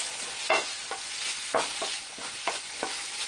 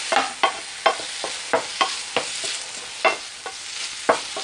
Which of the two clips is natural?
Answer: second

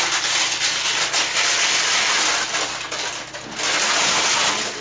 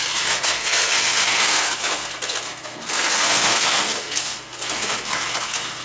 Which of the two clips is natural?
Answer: first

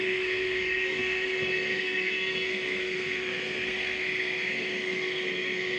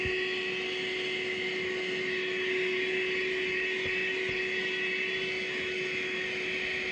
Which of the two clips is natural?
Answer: second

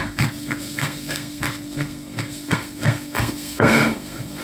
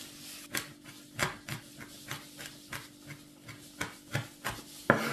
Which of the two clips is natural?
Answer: second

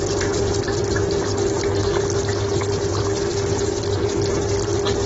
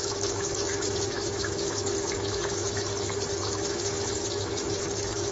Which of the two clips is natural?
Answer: first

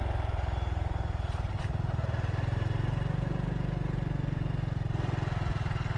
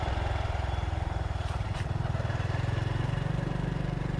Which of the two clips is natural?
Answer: first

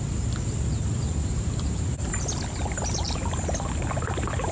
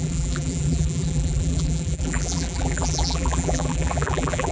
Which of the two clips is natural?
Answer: first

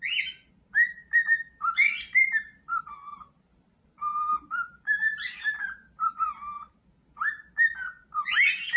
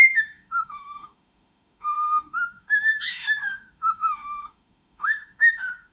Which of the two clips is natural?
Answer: first